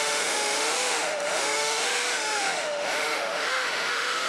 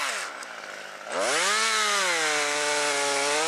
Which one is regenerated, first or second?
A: first